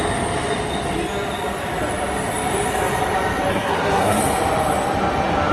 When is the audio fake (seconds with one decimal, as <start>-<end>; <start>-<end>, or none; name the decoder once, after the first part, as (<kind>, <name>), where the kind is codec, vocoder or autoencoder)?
3.5-4.2 (codec, SNAC)